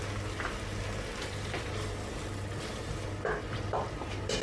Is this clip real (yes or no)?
yes